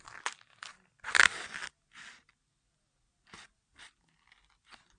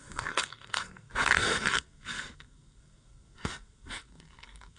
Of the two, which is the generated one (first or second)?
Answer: second